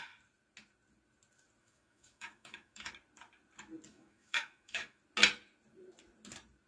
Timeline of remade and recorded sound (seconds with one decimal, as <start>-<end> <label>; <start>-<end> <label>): 0.0-1.6 recorded; 1.6-2.9 remade; 2.9-3.9 recorded; 3.9-5.0 remade; 5.0-6.7 recorded